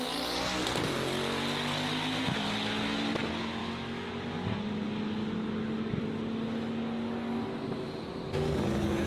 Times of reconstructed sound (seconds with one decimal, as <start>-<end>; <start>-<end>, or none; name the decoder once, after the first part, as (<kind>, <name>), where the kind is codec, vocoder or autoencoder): 3.6-4.1 (autoencoder, DAC-VAE)